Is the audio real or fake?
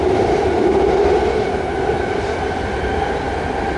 real